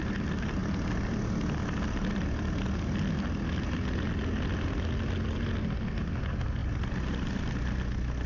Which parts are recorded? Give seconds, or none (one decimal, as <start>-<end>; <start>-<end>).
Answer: 0.0-8.3